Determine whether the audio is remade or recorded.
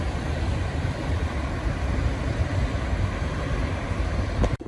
remade